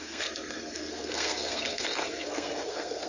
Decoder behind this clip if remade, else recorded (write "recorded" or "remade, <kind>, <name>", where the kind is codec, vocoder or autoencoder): remade, codec, SNAC